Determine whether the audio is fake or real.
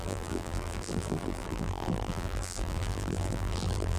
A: fake